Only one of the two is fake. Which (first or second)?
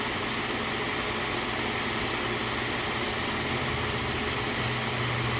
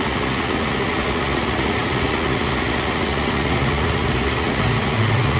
second